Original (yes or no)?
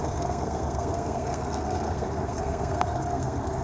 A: no